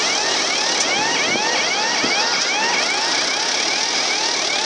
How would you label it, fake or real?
real